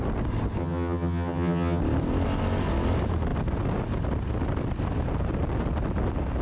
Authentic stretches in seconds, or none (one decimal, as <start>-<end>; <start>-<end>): 0.0-0.6; 1.8-6.4